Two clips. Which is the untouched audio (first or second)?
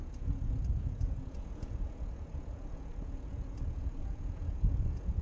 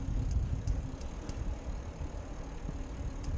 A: second